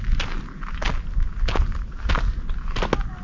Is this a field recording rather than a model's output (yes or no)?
yes